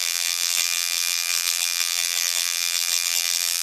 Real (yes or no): no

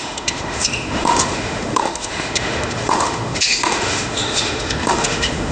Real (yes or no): no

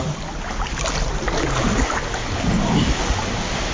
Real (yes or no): yes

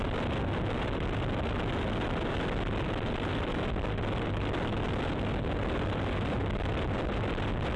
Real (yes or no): yes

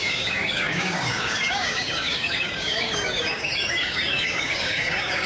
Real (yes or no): no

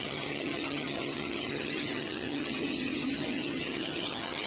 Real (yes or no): no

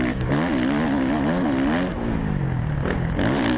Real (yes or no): yes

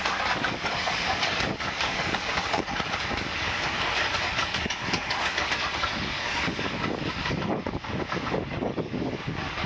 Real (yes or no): no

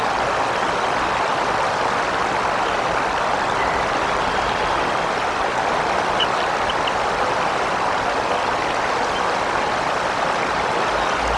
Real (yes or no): yes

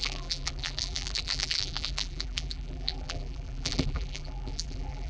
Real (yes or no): no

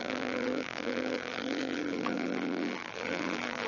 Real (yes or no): no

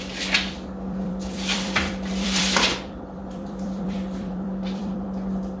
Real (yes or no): no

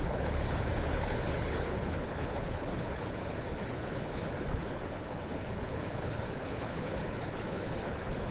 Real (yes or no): no